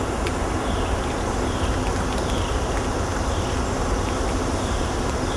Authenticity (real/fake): real